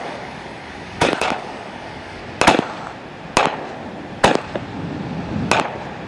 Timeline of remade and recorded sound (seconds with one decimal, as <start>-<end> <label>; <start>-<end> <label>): 0.0-2.2 remade; 2.2-6.1 recorded